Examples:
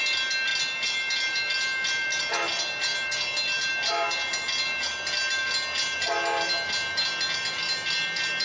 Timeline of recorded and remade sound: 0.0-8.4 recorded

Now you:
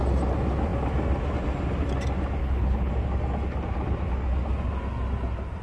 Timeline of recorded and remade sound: 0.0-2.4 recorded; 2.4-2.9 remade; 2.9-5.6 recorded

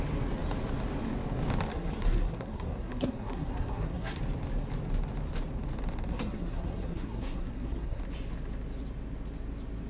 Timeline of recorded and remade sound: 0.0-1.7 recorded; 1.7-4.2 remade; 4.2-6.1 recorded; 6.1-8.0 remade; 8.0-9.9 recorded

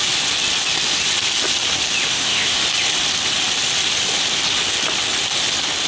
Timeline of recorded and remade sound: 0.0-2.1 recorded; 2.1-2.6 remade; 2.6-5.9 recorded

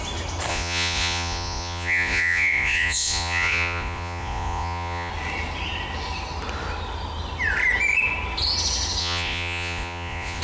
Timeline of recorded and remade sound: 0.0-0.5 recorded; 0.5-5.1 remade; 5.1-9.0 recorded; 9.0-10.4 remade